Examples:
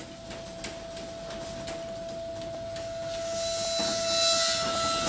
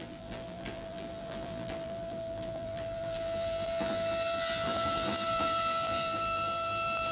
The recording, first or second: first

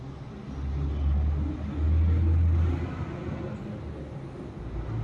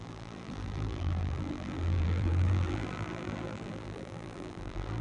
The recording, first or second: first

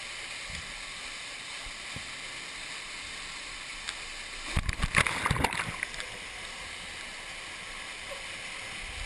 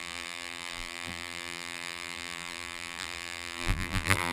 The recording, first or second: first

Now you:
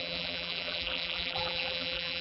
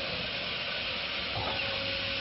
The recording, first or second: second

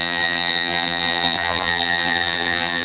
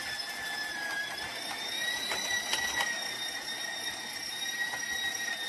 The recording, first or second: second